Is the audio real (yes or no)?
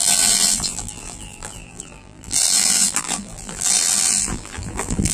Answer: no